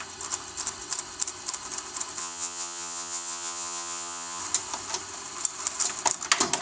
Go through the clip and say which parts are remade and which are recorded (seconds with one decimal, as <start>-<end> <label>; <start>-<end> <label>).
0.0-2.2 recorded; 2.2-4.4 remade; 4.4-6.6 recorded